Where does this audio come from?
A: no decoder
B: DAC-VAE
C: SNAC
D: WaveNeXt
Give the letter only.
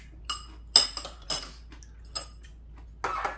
A